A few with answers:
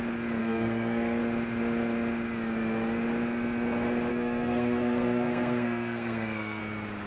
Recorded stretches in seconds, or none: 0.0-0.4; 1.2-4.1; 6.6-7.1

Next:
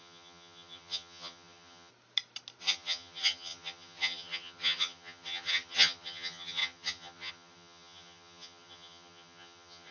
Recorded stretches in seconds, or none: 1.9-2.6

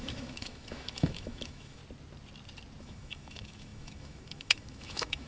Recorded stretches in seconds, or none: 1.8-2.8